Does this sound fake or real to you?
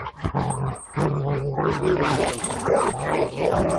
real